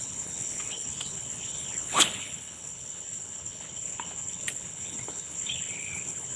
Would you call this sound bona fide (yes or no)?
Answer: no